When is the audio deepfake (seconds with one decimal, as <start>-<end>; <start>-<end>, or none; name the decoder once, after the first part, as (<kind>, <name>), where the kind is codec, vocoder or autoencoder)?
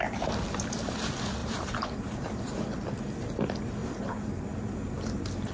1.4-2.6 (vocoder, BigVGAN v2); 3.8-4.4